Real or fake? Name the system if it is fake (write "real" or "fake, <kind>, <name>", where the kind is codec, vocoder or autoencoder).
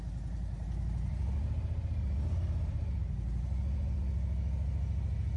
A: real